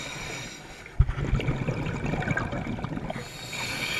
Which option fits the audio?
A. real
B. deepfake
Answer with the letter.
A